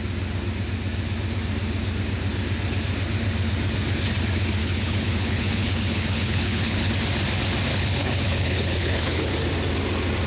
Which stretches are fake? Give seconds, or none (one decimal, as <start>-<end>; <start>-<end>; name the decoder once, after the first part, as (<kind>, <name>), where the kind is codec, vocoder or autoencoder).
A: 4.6-6.9 (codec, HILCodec); 7.7-9.3